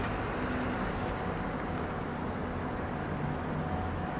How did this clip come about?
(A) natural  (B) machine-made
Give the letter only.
A